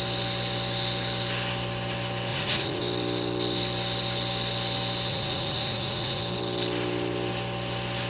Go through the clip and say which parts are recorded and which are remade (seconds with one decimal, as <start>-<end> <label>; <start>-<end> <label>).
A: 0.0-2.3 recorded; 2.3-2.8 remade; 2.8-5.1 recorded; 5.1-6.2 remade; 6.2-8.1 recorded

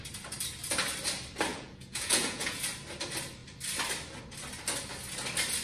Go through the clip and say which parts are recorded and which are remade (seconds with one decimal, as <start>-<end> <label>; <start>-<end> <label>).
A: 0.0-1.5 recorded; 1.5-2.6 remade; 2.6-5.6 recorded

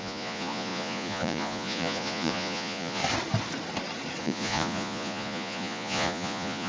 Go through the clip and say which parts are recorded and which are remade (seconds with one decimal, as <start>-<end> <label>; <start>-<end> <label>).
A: 0.0-3.0 remade; 3.0-4.2 recorded; 4.2-6.7 remade

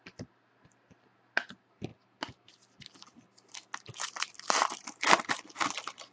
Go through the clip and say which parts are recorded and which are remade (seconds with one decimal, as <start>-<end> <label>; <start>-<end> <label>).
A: 0.0-6.1 recorded

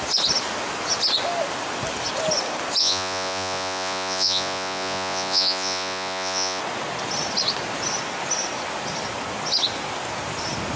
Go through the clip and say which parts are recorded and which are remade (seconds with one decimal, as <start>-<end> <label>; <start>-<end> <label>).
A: 0.0-2.8 recorded; 2.8-6.6 remade; 6.6-10.8 recorded

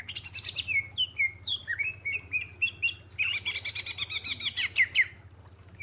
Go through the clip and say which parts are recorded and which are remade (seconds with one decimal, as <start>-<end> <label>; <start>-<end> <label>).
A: 0.0-5.8 recorded